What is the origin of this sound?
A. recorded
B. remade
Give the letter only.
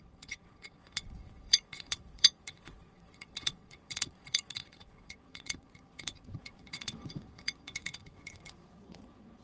B